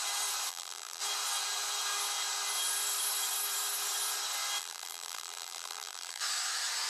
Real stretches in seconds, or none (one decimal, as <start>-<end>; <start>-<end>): 0.0-0.5; 1.0-4.6; 6.2-6.9